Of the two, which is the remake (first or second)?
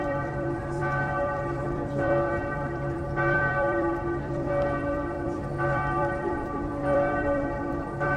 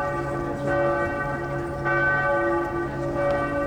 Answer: first